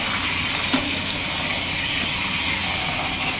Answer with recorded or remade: recorded